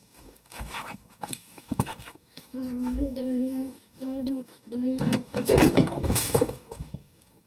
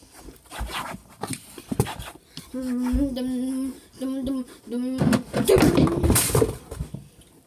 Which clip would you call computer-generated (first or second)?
first